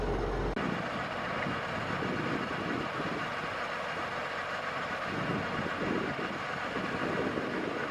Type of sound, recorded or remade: recorded